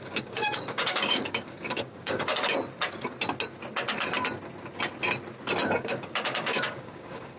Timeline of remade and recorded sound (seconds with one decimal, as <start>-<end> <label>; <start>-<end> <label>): 0.0-2.3 remade; 2.3-5.8 recorded; 5.8-7.4 remade

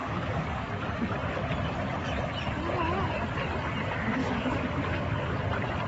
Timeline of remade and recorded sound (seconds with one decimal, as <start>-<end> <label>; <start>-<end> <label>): 0.0-0.7 remade; 0.7-4.2 recorded; 4.2-5.4 remade; 5.4-5.9 recorded

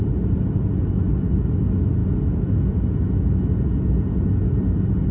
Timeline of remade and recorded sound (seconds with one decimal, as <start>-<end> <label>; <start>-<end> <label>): 0.0-5.1 recorded

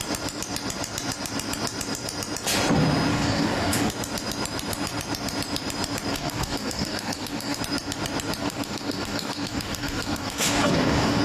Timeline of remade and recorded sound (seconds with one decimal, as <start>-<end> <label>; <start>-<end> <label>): 0.0-3.1 recorded; 3.1-3.9 remade; 3.9-6.1 recorded; 6.1-7.6 remade; 7.6-8.4 recorded; 8.4-11.2 remade